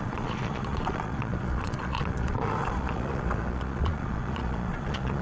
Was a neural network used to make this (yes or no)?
yes